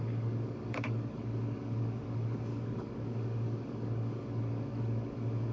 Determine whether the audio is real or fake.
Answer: fake